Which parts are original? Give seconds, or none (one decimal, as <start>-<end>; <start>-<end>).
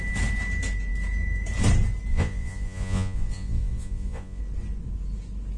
0.0-2.1; 4.4-5.6